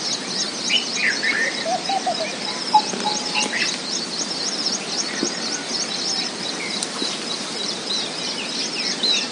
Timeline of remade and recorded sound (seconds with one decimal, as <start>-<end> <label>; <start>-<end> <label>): 0.0-1.0 recorded; 1.0-2.5 remade; 2.5-9.3 recorded